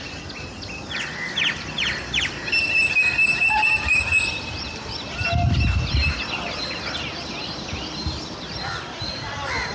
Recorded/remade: recorded